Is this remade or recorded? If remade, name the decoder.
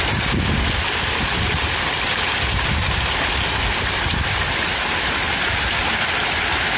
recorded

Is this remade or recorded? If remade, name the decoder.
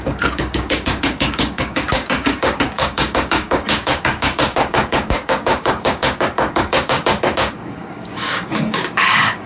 remade, codec, DAC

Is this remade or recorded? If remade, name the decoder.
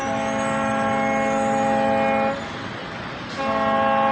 recorded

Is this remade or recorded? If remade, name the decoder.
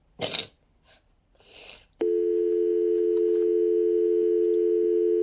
recorded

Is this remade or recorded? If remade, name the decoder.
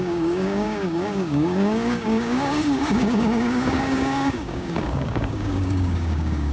remade, codec, DAC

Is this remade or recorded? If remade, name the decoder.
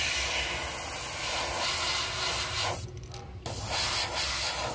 recorded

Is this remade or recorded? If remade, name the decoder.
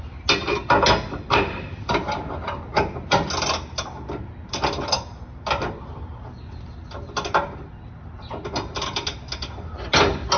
recorded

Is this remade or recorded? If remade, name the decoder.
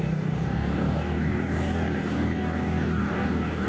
remade, codec, DAC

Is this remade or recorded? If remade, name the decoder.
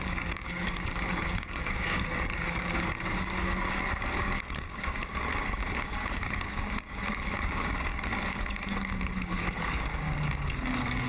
remade, codec, DAC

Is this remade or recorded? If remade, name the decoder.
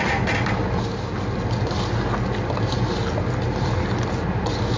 recorded